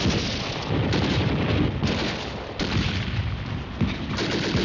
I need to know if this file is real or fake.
real